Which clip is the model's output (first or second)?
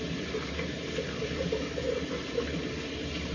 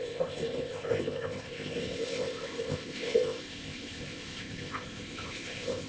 second